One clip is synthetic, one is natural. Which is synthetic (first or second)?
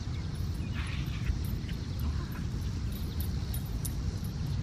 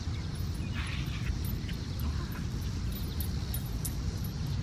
first